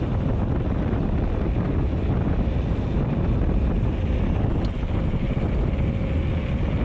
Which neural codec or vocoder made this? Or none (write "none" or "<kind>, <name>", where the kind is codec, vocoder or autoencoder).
none